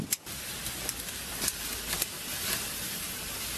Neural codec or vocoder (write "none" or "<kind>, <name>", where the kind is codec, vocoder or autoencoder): none